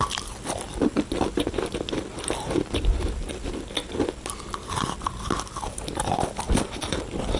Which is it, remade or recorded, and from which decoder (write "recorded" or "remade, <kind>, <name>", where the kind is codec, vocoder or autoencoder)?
remade, vocoder, BigVGAN v2